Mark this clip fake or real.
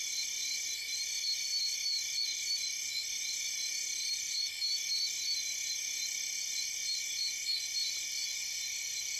real